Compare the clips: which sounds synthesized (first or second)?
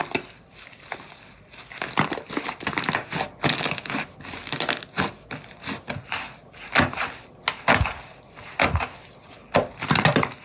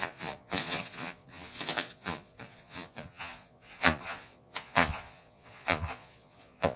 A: second